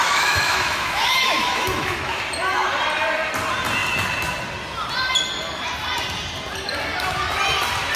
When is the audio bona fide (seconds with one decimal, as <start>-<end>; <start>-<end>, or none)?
2.2-8.0